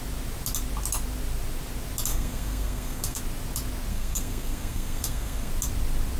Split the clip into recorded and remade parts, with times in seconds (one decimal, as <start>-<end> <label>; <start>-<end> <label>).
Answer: 0.0-2.1 recorded; 2.1-3.2 remade; 3.2-3.9 recorded; 3.9-5.5 remade; 5.5-6.2 recorded

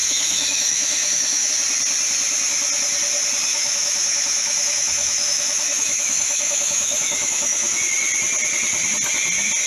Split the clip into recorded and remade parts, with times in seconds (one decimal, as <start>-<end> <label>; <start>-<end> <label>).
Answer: 0.0-1.5 remade; 1.5-3.5 recorded; 3.5-7.8 remade; 7.8-9.7 recorded

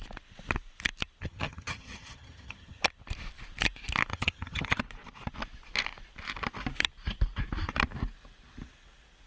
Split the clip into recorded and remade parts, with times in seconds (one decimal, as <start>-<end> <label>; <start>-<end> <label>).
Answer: 0.0-1.2 recorded; 1.2-2.8 remade; 2.8-4.1 recorded; 4.1-4.8 remade; 4.8-9.3 recorded

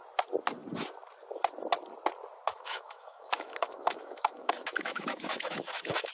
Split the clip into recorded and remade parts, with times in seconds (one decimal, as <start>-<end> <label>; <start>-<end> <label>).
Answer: 0.0-2.5 recorded; 2.5-6.1 remade

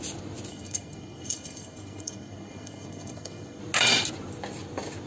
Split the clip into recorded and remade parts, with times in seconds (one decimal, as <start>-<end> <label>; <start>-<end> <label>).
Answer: 0.0-0.5 recorded; 0.5-3.6 remade; 3.6-5.1 recorded